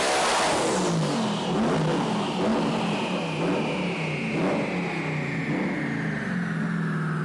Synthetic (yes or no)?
no